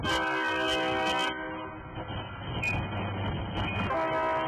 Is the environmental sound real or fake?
real